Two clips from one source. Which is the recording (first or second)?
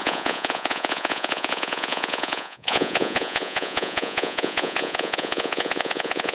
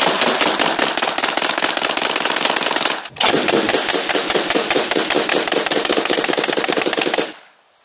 second